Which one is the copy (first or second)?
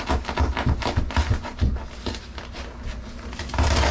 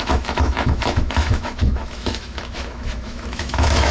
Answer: second